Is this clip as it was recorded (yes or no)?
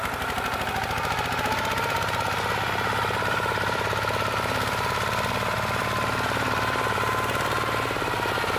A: no